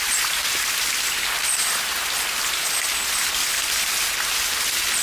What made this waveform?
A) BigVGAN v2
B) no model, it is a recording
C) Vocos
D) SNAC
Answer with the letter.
B